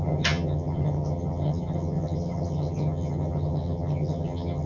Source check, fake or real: fake